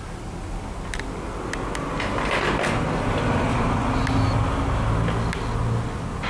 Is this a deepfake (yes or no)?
no